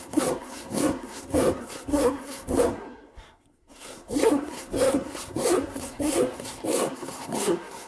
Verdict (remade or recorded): remade